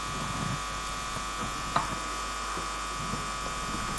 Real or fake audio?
real